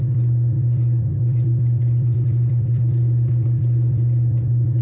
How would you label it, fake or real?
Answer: fake